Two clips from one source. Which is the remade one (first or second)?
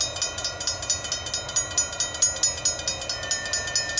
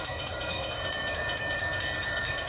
second